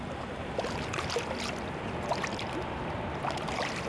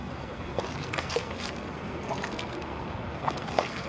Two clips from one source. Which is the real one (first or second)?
first